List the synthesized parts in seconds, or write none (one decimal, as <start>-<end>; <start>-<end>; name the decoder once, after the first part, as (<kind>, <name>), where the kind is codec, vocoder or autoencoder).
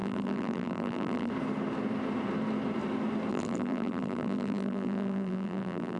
0.0-1.3 (vocoder, BigVGAN v2); 3.3-6.0